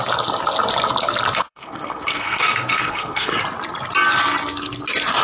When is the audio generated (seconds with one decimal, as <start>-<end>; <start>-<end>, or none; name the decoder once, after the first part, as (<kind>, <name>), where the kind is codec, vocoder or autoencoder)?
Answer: 1.5-3.3 (codec, SNAC)